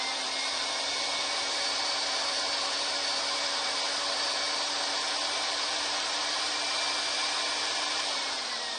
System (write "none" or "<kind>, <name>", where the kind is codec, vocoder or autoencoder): vocoder, BigVGAN v2